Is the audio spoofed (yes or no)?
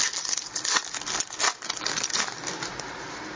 no